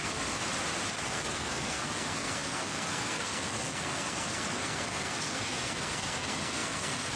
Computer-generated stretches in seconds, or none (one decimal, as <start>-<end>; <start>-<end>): 0.0-0.4; 0.9-7.2